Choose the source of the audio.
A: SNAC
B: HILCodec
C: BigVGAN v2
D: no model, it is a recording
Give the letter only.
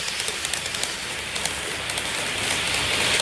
C